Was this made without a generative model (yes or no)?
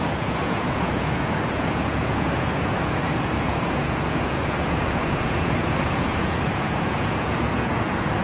no